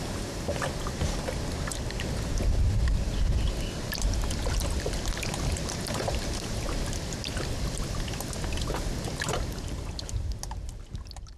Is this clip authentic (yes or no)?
yes